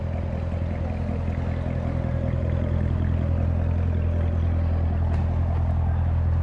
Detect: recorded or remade recorded